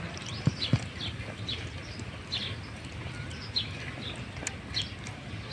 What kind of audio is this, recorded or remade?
recorded